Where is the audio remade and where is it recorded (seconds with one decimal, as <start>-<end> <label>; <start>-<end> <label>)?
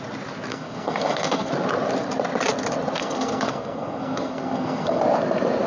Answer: 0.0-0.5 recorded; 0.5-1.5 remade; 1.5-3.0 recorded; 3.0-5.0 remade; 5.0-5.7 recorded